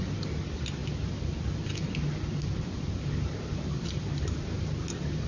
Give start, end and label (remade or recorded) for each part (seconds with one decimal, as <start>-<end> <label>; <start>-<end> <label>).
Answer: 0.0-5.3 recorded